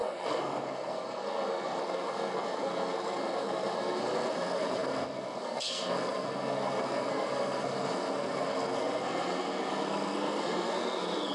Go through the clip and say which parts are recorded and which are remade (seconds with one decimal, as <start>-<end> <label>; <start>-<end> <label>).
0.0-11.3 remade